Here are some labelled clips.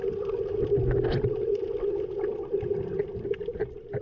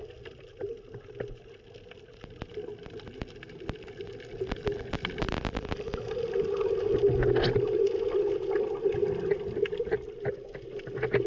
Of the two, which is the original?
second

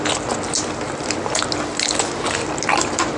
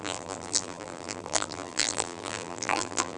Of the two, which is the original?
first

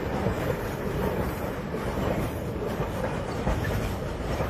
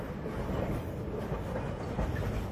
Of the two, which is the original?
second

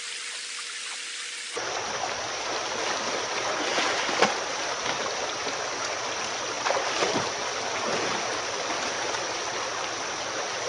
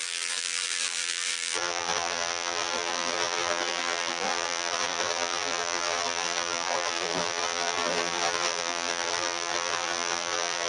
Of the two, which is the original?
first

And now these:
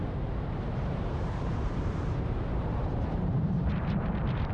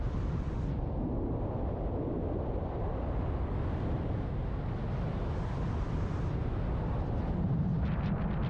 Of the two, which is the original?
second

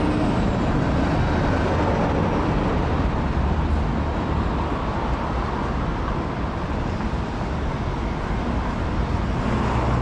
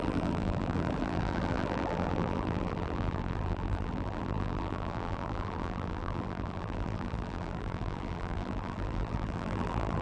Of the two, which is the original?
first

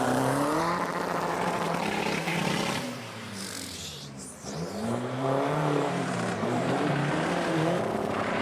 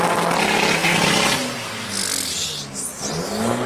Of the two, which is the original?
second